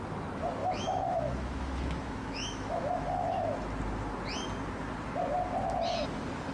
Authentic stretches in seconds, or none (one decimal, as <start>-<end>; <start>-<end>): 0.0-0.6; 3.5-6.5